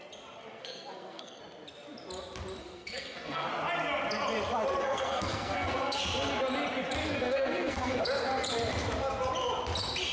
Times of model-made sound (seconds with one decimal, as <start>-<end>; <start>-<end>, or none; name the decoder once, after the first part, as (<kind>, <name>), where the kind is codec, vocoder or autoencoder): 0.5-1.4 (codec, SNAC); 2.6-3.5; 4.8-6.0; 7.0-8.0

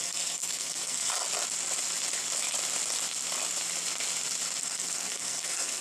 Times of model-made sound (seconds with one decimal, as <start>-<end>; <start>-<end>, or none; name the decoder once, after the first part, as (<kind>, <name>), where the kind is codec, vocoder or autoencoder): 0.0-1.1 (codec, SNAC); 4.6-5.8

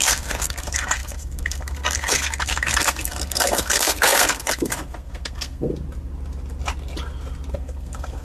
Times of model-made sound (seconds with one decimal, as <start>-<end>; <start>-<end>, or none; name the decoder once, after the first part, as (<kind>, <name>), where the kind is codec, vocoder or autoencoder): 0.0-5.7 (codec, SNAC); 7.5-8.2

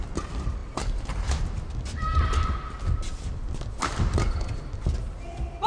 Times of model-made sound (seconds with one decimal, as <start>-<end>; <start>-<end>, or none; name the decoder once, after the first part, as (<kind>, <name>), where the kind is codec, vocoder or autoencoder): none

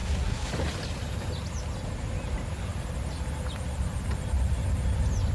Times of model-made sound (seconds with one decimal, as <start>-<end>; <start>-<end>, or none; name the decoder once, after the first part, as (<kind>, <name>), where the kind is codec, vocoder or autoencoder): 0.0-0.5 (codec, SNAC)